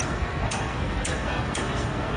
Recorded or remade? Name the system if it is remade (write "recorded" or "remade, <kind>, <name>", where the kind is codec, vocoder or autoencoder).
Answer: remade, codec, SNAC